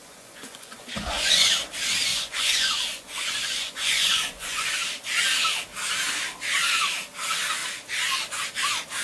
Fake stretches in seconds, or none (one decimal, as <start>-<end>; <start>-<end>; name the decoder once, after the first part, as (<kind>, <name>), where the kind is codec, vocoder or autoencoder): 0.0-1.5 (vocoder, Vocos); 2.1-4.7

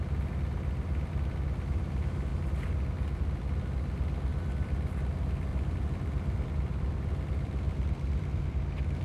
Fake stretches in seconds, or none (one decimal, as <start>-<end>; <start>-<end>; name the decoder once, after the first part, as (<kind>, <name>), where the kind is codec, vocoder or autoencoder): 5.5-8.4 (vocoder, BigVGAN v2)

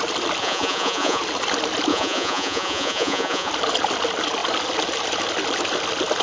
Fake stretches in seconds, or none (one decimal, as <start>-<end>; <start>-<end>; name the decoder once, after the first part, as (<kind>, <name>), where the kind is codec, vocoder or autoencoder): 0.4-1.2 (vocoder, Vocos); 1.9-3.5

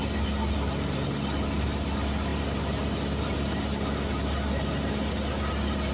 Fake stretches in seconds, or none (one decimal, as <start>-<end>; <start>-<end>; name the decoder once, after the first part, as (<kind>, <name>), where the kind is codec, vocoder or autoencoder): none

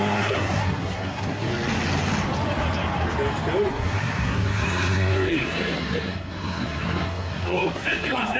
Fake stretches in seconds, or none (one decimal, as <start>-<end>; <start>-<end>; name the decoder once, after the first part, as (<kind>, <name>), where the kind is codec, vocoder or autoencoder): 0.0-1.5 (codec, SNAC); 3.7-8.4

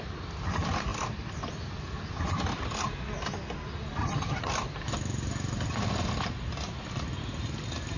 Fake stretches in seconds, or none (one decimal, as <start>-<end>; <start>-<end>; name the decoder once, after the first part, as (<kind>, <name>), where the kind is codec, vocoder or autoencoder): 4.0-4.5 (vocoder, HiFi-GAN)

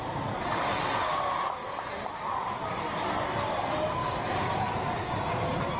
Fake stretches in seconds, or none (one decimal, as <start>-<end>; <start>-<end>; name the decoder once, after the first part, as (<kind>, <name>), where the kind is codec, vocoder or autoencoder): 1.6-2.1 (vocoder, BigVGAN v2); 4.0-4.7

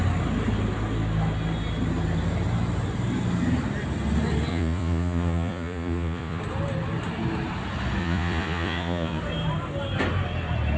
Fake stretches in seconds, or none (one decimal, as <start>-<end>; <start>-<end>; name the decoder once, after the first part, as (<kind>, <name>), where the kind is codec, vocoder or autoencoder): 4.5-6.4 (vocoder, Vocos); 8.0-9.2